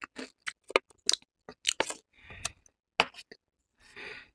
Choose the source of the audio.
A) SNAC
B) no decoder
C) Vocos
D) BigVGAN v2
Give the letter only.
B